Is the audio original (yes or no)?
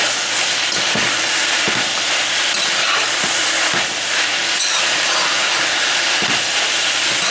yes